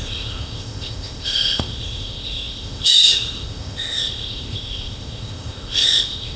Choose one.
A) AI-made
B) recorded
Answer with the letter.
A